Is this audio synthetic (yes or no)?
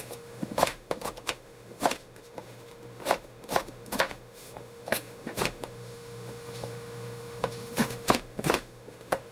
yes